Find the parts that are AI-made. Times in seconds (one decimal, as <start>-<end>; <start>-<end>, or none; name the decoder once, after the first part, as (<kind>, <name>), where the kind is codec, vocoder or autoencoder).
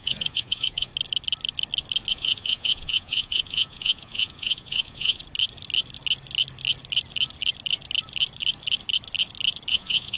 0.0-0.9 (vocoder, Vocos); 2.1-5.2; 9.7-10.2